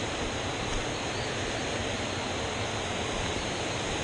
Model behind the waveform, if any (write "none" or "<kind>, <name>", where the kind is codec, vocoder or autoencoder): none